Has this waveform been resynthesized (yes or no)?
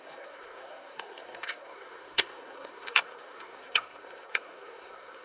yes